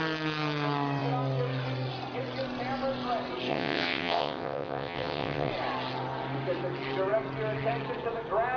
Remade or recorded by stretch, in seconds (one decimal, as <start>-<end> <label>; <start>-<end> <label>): 0.0-3.5 recorded; 3.5-5.5 remade; 5.5-8.6 recorded